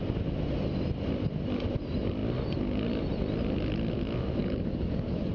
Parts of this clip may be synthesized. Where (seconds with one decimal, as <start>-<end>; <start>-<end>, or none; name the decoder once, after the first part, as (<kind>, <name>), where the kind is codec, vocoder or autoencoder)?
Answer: 4.4-5.3 (codec, DAC)